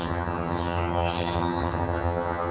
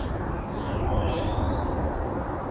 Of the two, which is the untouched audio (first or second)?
second